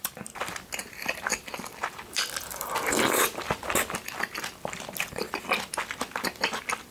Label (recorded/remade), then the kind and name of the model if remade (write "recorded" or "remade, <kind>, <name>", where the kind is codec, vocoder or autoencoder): remade, vocoder, BigVGAN v2